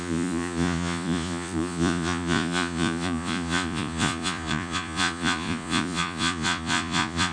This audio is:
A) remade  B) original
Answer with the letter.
A